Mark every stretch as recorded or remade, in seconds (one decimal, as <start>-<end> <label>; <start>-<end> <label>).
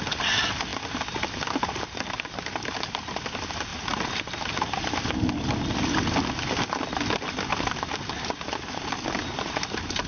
0.0-10.1 recorded